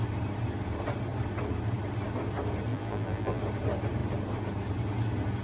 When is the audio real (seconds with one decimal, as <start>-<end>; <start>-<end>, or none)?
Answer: 0.0-2.7; 3.4-5.4